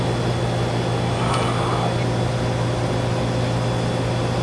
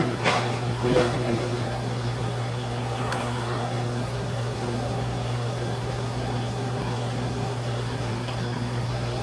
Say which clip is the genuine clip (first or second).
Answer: first